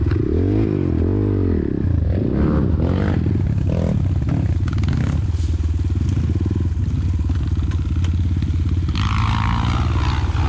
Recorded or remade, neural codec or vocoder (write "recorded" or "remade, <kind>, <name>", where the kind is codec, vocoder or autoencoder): recorded